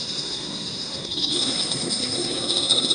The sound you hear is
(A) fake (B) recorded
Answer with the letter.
A